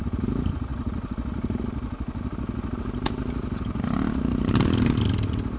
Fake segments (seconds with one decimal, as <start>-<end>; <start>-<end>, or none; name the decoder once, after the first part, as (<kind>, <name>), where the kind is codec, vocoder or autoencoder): none

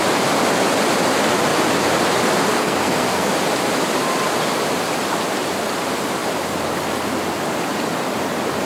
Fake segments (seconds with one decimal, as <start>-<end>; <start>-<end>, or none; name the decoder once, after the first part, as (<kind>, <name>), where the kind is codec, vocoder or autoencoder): 2.5-3.3 (codec, SNAC)

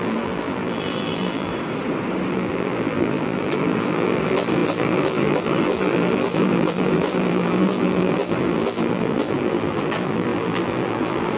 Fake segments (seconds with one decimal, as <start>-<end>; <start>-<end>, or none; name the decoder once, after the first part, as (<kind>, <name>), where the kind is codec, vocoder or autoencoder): 0.0-1.5 (vocoder, BigVGAN v2); 2.3-11.4

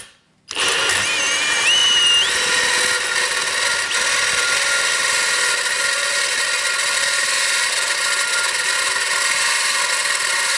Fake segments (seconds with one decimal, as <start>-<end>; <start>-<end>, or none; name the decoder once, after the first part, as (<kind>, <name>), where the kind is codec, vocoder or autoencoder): none

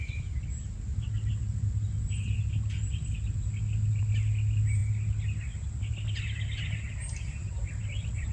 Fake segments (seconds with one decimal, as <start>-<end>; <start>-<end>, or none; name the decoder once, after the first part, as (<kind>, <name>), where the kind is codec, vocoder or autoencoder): none